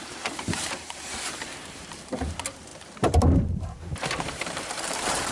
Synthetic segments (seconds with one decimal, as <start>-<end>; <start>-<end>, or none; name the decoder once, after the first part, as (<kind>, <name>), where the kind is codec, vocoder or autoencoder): 0.0-5.3 (vocoder, BigVGAN v2)